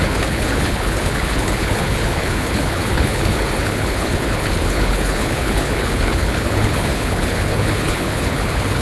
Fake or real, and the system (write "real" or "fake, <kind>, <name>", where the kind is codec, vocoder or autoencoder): fake, codec, HILCodec